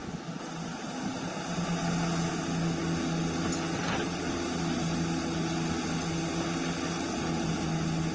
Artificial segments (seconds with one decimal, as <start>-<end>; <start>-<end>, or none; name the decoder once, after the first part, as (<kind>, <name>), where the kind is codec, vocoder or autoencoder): none